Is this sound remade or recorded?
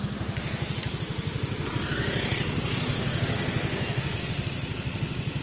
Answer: recorded